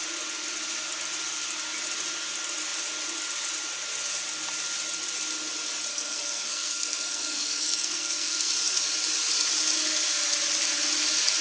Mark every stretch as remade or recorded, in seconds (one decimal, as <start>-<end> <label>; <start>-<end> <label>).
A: 0.0-5.9 recorded; 5.9-8.5 remade; 8.5-11.4 recorded